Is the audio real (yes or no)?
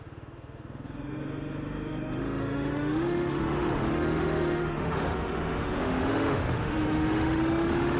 no